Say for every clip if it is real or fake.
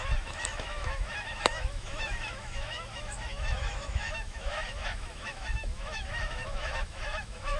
fake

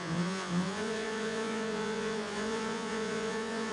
fake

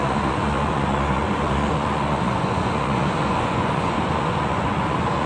fake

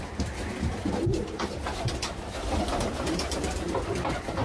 real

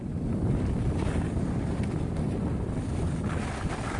real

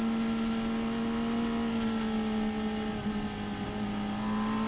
real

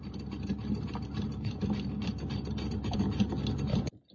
real